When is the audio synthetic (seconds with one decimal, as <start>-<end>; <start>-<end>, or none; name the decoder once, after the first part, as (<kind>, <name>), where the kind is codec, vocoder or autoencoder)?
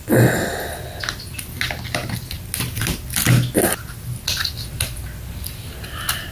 none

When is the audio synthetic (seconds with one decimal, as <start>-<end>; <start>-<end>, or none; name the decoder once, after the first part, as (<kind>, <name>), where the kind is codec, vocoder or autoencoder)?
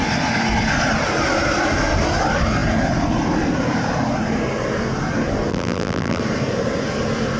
5.5-6.2 (vocoder, BigVGAN v2)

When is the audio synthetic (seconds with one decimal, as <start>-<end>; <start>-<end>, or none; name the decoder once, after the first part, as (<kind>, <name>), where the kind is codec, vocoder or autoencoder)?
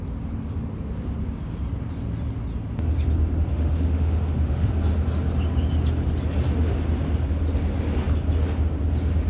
3.5-4.7 (autoencoder, DAC-VAE)